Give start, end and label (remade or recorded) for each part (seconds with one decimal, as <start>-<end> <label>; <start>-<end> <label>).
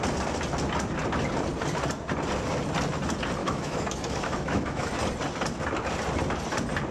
0.0-3.4 recorded; 3.4-4.9 remade; 4.9-6.9 recorded